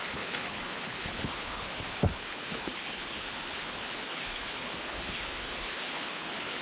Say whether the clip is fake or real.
fake